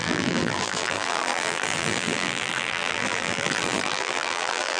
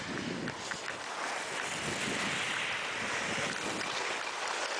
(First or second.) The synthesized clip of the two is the first